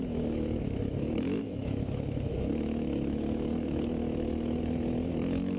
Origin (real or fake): fake